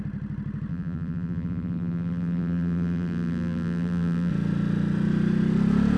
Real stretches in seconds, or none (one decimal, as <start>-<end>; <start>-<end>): 0.0-0.7; 4.3-6.0